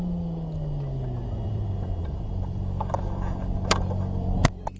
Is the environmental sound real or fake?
real